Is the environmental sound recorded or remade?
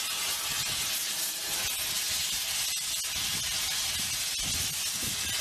recorded